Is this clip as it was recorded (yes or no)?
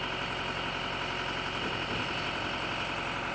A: yes